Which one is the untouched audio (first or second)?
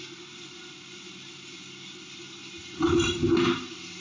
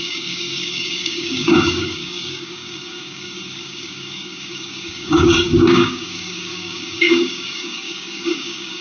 first